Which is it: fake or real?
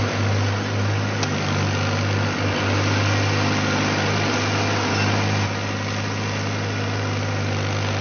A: real